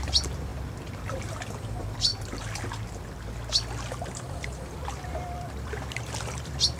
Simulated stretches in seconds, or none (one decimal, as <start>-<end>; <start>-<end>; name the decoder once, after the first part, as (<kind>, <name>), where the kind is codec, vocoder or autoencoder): 0.0-0.5 (vocoder, BigVGAN v2); 1.6-2.1; 4.3-6.8